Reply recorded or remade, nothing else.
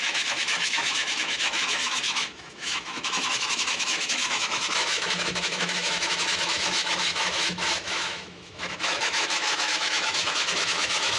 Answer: remade